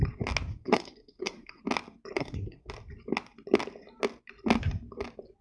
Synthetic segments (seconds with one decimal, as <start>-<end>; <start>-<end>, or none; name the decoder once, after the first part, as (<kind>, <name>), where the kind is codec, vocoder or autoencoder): 0.5-1.6 (codec, SNAC); 2.2-2.7